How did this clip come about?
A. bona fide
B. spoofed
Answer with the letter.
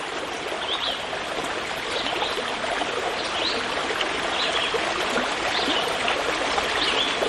A